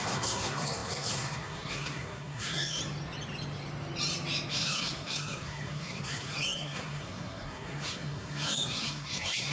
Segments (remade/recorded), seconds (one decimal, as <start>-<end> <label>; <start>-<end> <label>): 0.0-2.8 remade; 2.8-4.5 recorded; 4.5-9.5 remade

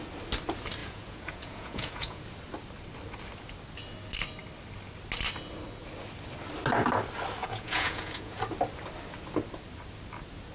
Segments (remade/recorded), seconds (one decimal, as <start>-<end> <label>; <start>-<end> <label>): 0.0-0.8 recorded; 0.8-2.2 remade; 2.2-7.4 recorded; 7.4-8.4 remade; 8.4-10.5 recorded